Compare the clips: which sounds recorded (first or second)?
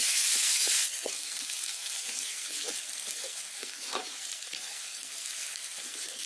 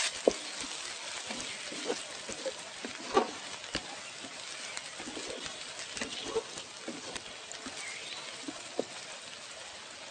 second